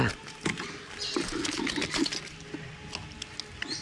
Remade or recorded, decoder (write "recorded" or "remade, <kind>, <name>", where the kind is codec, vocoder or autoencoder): recorded